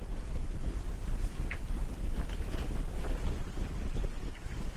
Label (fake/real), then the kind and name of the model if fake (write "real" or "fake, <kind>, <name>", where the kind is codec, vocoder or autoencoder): real